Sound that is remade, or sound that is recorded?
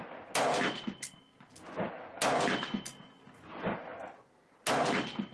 recorded